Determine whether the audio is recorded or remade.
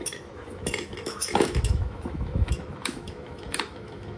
remade